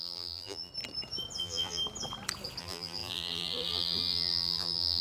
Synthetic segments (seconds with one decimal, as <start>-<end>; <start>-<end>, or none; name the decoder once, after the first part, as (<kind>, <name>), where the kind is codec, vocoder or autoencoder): 0.0-0.7 (vocoder, BigVGAN v2); 1.4-1.8; 2.6-5.0